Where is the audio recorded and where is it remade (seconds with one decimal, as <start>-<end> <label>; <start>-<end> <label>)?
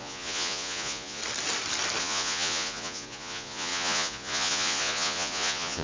0.0-1.2 remade; 1.2-2.0 recorded; 2.0-5.8 remade